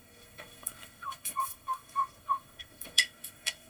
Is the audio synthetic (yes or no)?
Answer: yes